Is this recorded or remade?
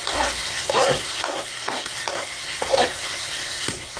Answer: remade